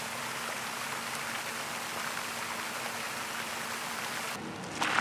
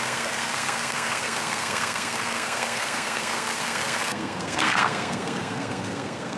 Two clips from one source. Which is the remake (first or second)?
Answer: second